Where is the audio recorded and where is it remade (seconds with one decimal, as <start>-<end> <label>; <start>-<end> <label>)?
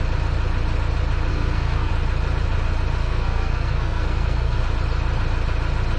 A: 0.0-1.3 recorded; 1.3-1.9 remade; 1.9-3.0 recorded; 3.0-4.6 remade; 4.6-6.0 recorded